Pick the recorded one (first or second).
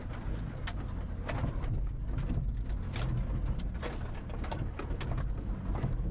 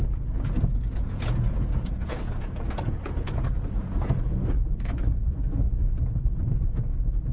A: first